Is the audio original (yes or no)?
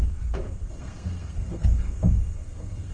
no